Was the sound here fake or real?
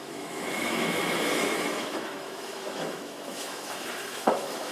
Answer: fake